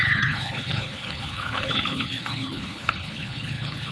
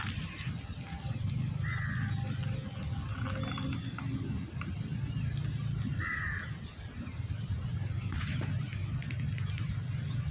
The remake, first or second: first